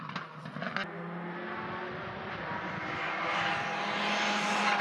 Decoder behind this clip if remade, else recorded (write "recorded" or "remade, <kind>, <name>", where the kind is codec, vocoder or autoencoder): recorded